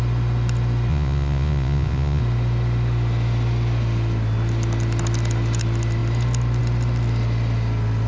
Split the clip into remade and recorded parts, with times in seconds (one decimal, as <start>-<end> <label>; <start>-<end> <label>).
0.0-0.9 recorded; 0.9-2.2 remade; 2.2-8.1 recorded